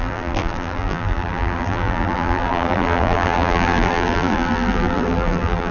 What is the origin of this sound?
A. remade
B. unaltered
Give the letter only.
A